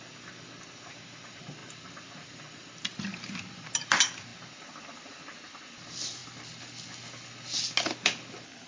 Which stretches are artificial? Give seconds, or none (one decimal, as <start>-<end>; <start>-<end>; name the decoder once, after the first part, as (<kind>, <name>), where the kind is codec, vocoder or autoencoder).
none